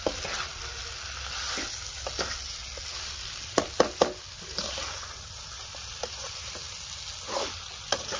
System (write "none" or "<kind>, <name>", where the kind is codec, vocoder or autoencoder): none